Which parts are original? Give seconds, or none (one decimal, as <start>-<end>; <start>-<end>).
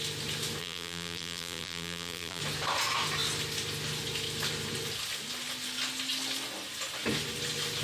0.0-0.6; 2.4-7.8